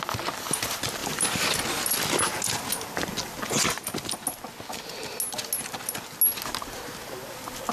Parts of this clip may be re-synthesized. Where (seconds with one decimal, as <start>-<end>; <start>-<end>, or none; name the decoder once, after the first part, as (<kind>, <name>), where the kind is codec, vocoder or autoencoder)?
none